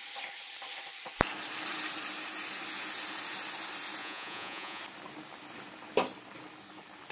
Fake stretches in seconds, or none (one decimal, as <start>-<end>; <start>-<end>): 4.0-4.8